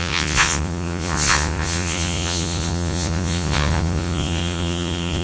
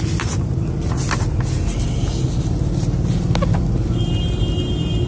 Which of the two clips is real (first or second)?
second